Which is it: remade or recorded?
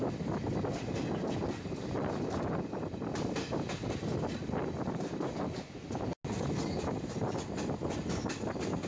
recorded